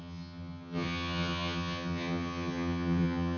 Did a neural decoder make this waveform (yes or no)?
yes